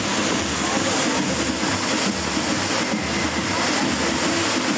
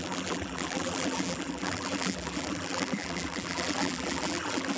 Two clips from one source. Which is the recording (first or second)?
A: first